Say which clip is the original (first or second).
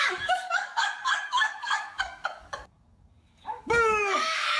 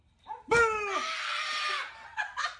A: second